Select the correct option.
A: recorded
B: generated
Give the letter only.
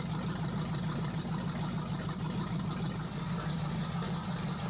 A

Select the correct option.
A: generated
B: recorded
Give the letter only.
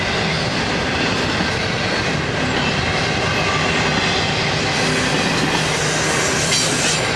B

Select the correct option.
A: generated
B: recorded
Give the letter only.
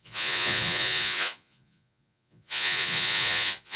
A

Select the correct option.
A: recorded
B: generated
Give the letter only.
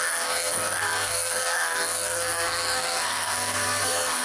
B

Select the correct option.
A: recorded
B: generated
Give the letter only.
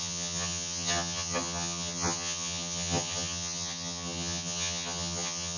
B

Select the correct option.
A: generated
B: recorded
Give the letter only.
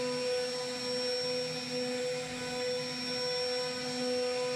B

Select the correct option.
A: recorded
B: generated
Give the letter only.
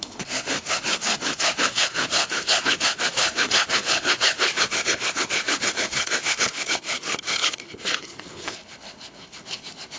B